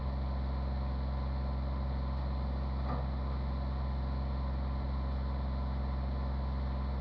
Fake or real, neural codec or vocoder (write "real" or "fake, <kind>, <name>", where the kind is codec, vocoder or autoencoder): real